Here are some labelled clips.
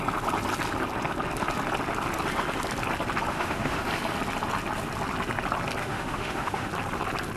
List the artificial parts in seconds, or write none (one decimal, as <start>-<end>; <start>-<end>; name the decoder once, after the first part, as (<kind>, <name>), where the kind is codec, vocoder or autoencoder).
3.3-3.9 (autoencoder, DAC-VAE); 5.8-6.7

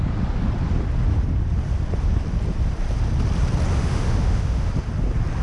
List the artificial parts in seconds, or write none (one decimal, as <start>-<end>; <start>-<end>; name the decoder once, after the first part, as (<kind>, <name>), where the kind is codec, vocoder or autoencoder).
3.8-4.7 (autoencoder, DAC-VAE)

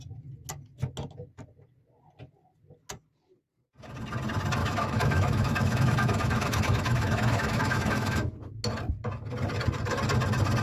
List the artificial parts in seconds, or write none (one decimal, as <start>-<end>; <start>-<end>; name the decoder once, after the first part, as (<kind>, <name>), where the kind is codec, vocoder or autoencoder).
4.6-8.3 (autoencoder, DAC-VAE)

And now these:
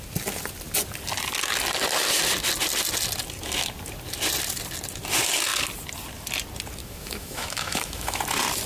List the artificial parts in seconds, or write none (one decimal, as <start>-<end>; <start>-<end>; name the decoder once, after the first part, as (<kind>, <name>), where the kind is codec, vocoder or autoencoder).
6.8-8.2 (autoencoder, DAC-VAE)

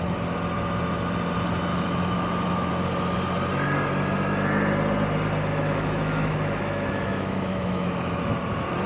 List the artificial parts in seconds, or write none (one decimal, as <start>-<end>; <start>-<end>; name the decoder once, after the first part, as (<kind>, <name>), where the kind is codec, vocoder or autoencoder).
1.7-2.7 (autoencoder, DAC-VAE); 5.5-8.3

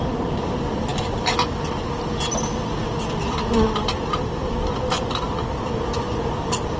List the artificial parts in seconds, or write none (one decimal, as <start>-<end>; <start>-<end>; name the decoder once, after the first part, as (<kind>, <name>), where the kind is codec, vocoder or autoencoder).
none